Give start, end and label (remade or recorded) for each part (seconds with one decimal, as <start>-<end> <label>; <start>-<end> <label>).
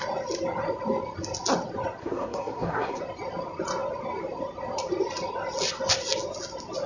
0.0-2.0 recorded; 2.0-3.0 remade; 3.0-6.9 recorded